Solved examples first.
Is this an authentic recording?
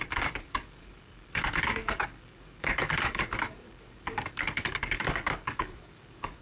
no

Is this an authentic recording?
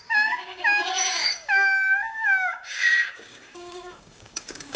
no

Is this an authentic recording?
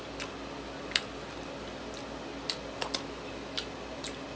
yes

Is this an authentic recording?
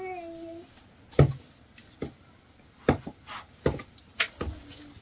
yes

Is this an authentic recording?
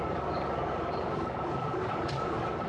no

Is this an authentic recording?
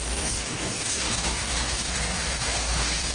no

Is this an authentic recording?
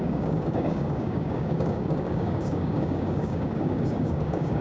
no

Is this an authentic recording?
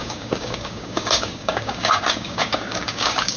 no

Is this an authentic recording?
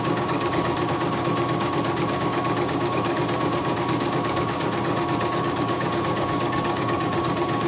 no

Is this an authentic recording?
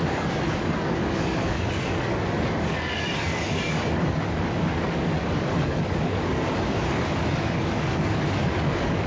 no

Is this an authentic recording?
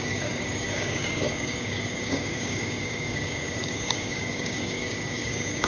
no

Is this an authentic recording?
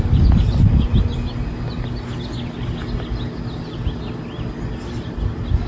yes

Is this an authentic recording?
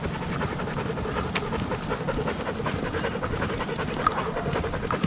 yes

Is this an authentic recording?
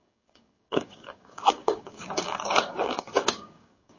no